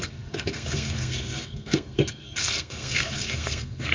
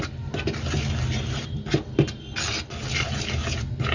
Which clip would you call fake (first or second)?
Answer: first